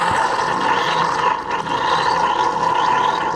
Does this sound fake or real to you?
real